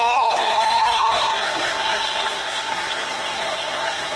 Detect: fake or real fake